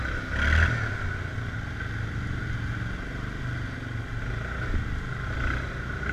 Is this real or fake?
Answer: real